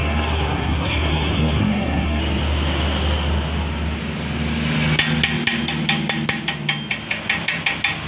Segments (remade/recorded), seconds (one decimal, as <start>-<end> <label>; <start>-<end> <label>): 0.0-2.2 remade; 2.2-8.1 recorded